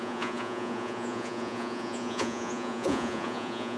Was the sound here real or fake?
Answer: fake